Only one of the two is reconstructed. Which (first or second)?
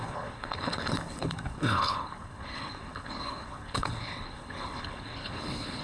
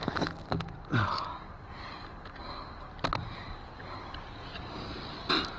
first